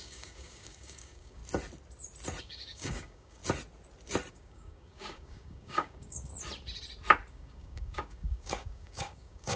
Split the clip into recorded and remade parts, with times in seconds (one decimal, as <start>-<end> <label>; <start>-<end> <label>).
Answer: 0.0-1.4 remade; 1.4-2.4 recorded; 2.4-3.4 remade; 3.4-4.3 recorded; 4.3-6.3 remade; 6.3-7.3 recorded; 7.3-9.6 remade